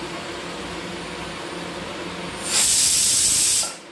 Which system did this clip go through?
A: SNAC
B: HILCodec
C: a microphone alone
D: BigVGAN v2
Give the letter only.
C